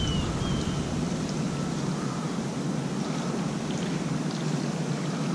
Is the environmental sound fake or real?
real